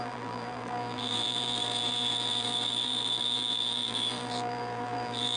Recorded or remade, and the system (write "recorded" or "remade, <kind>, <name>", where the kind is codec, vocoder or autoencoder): remade, vocoder, BigVGAN v2